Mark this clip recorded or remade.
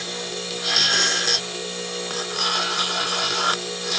recorded